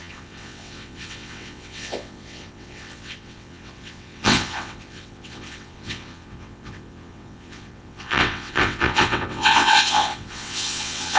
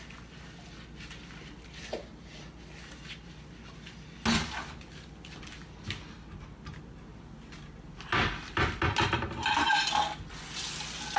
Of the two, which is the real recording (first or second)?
second